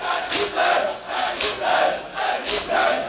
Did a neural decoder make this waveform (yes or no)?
yes